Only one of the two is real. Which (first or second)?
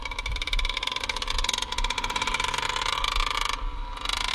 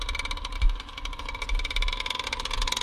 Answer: second